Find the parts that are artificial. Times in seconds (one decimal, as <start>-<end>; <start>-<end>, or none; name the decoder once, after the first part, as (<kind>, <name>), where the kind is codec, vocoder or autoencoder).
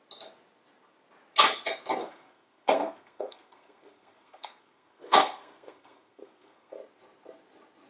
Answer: 2.0-6.7 (codec, SNAC)